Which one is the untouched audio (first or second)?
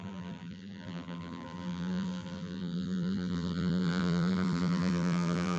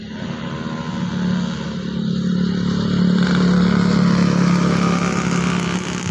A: second